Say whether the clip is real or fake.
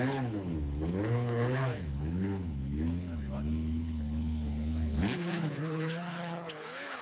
fake